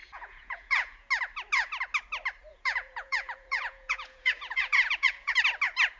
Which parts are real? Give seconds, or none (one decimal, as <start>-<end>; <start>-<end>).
1.1-2.5; 5.3-6.0